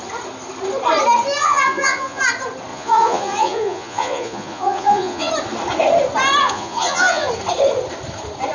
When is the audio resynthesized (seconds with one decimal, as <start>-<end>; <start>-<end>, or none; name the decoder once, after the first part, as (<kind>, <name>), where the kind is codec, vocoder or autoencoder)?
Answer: 1.4-2.2 (vocoder, Vocos); 2.7-5.3; 6.4-7.3